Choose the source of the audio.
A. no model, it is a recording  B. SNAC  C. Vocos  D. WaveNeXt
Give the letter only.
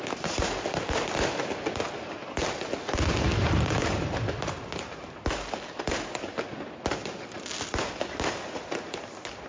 A